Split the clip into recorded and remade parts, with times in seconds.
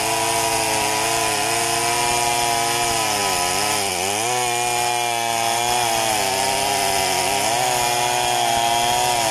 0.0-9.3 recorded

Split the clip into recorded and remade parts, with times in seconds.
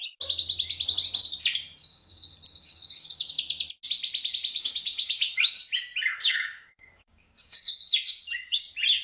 0.0-1.9 recorded; 1.9-3.3 remade; 3.3-4.5 recorded; 4.5-5.6 remade; 5.6-6.2 recorded; 6.2-8.6 remade; 8.6-9.0 recorded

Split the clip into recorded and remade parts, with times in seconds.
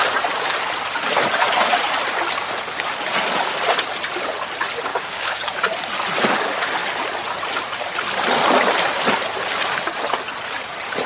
0.0-4.9 recorded; 4.9-5.5 remade; 5.5-11.1 recorded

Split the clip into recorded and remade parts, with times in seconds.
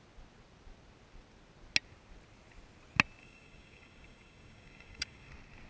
0.0-3.2 recorded; 3.2-5.3 remade; 5.3-5.7 recorded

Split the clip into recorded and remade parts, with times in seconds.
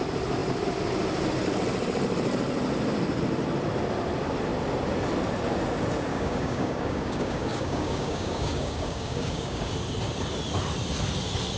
0.0-6.1 recorded; 6.1-9.7 remade; 9.7-11.6 recorded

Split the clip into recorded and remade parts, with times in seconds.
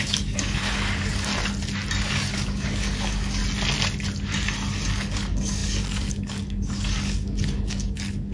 0.0-1.3 remade; 1.3-2.0 recorded; 2.0-3.4 remade; 3.4-4.9 recorded; 4.9-8.3 remade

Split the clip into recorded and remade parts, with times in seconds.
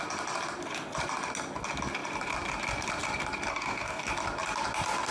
0.0-3.5 recorded; 3.5-4.1 remade; 4.1-5.1 recorded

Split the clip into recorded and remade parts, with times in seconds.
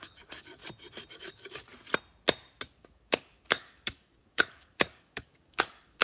0.0-0.6 remade; 0.6-1.1 recorded; 1.1-1.7 remade; 1.7-2.8 recorded; 2.8-6.0 remade